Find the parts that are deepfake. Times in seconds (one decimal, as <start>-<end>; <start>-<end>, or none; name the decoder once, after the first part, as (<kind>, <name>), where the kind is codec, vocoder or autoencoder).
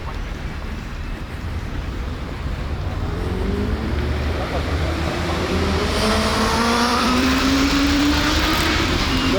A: 0.6-6.3 (vocoder, BigVGAN v2); 7.0-8.0; 8.7-9.4